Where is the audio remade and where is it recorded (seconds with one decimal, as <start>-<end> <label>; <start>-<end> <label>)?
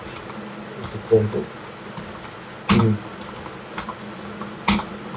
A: 0.0-5.2 recorded